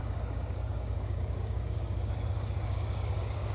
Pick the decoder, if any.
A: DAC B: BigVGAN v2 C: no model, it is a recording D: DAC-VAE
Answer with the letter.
A